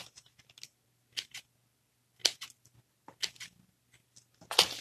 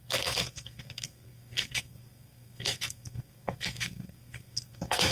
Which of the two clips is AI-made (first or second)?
second